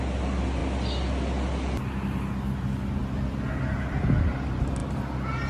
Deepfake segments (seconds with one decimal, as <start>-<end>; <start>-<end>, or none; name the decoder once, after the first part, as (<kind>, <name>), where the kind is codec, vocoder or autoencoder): none